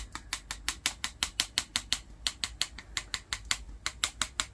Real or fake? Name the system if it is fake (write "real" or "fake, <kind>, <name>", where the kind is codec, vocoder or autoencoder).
real